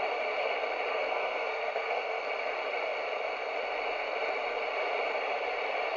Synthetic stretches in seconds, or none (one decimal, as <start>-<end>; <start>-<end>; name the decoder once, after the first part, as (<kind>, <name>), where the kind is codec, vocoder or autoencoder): 0.9-2.2 (codec, SNAC)